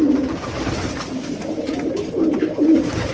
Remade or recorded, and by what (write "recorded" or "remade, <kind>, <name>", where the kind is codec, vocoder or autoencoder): remade, vocoder, BigVGAN v2